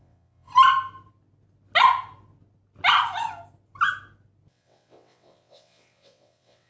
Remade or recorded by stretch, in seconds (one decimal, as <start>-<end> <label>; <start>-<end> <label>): 0.0-0.5 remade; 0.5-4.5 recorded; 4.5-6.7 remade